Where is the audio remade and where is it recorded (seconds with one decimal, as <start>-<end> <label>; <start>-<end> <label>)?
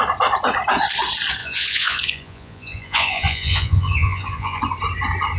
0.0-1.4 recorded; 1.4-4.6 remade; 4.6-5.4 recorded